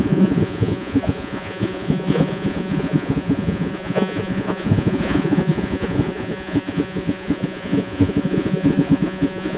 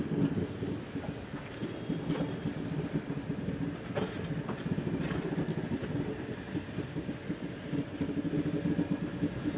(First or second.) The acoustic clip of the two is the second